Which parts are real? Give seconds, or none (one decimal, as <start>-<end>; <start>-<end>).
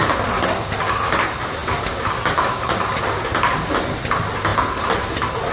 0.0-5.5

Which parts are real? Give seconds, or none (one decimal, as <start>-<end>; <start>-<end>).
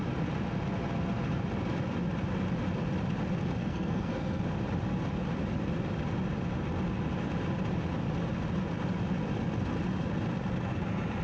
0.0-3.6; 4.4-11.2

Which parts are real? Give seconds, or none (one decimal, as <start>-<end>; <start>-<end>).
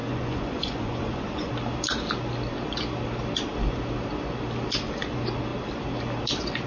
1.5-6.7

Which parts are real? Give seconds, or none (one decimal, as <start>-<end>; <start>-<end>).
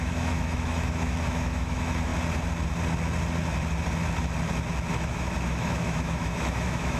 2.1-4.9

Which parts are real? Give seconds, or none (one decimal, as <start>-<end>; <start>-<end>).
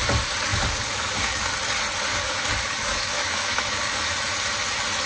0.0-0.5; 1.5-2.1; 4.1-5.1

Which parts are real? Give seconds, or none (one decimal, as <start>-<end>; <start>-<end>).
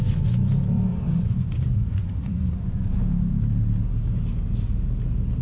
0.0-0.9; 3.0-5.4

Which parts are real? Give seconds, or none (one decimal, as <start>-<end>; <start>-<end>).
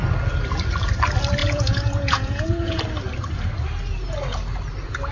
0.0-1.4; 2.8-5.1